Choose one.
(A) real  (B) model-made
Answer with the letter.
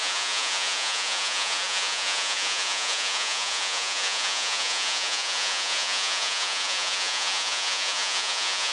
B